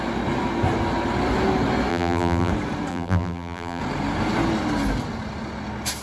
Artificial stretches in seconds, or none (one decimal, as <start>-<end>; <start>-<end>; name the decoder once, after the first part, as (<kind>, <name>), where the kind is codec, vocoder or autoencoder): 1.9-2.5 (vocoder, BigVGAN v2); 2.9-3.8